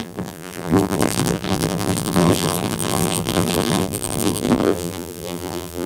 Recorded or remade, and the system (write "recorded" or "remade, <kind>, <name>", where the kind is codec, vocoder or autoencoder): remade, vocoder, BigVGAN v2